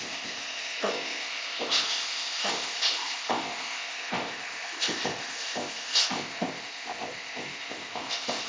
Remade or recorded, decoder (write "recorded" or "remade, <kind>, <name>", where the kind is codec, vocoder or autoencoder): remade, codec, ZipCodec